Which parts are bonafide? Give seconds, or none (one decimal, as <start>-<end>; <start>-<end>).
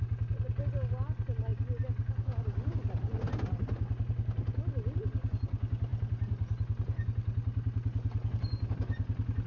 0.0-9.5